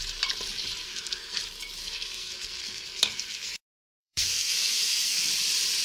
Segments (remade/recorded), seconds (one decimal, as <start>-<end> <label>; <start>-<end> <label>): 0.0-0.8 recorded; 0.8-1.4 remade; 1.4-1.8 recorded; 1.8-5.3 remade; 5.3-5.8 recorded